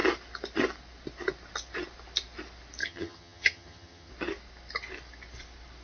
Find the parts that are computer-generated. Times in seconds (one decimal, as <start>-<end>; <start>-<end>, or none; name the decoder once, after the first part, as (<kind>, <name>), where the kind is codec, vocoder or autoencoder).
2.8-4.1 (vocoder, HiFi-GAN)